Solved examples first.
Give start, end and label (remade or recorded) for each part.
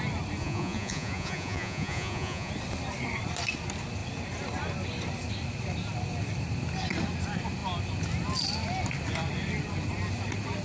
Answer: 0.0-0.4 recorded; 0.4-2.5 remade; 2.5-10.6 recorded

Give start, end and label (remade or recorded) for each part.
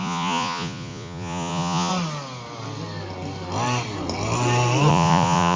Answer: 0.0-1.9 remade; 1.9-4.9 recorded; 4.9-5.6 remade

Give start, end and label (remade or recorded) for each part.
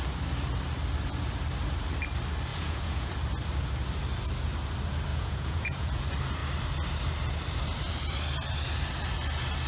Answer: 0.0-2.5 recorded; 2.5-3.1 remade; 3.1-5.1 recorded; 5.1-6.0 remade; 6.0-9.7 recorded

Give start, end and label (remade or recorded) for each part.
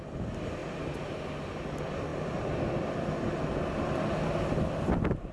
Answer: 0.0-5.3 recorded